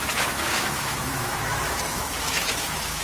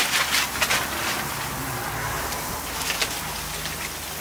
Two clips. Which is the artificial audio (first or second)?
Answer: first